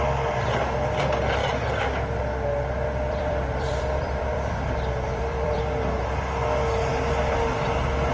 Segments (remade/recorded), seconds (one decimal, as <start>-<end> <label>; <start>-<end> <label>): 0.0-3.0 recorded; 3.0-5.6 remade; 5.6-8.1 recorded